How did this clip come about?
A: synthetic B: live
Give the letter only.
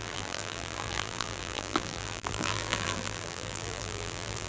A